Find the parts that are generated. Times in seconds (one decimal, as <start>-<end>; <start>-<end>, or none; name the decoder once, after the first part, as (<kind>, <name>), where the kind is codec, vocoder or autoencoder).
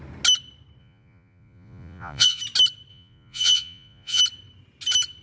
0.8-2.4 (vocoder, Vocos); 2.9-4.2